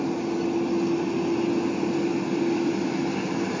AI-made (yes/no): no